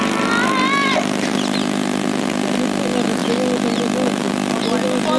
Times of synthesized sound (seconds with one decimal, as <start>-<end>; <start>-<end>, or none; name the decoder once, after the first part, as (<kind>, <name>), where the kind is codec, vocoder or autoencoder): none